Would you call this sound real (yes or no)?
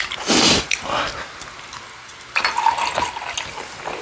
yes